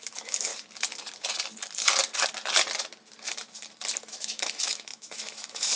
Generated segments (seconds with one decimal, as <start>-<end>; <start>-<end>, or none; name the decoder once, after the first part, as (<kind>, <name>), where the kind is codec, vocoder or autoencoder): 0.0-0.5 (autoencoder, DAC-VAE); 4.0-5.8